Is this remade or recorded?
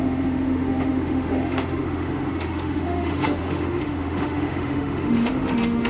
remade